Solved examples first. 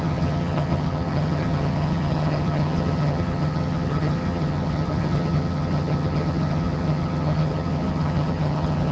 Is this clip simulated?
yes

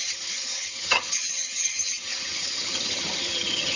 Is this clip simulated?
yes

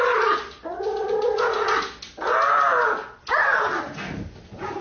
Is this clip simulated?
no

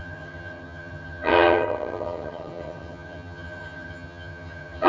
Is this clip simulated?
yes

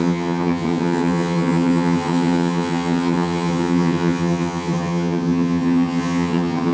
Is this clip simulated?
yes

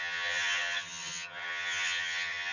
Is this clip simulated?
yes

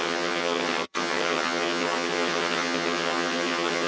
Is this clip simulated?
yes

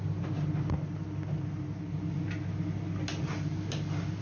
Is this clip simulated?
no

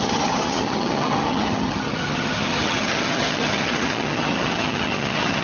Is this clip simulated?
yes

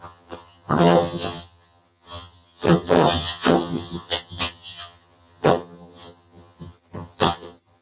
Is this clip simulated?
yes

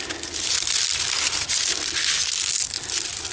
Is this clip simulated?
no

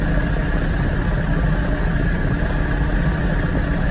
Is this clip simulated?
no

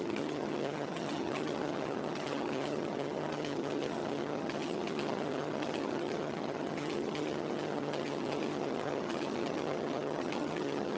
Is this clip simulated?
yes